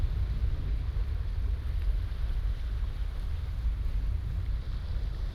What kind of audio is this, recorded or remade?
recorded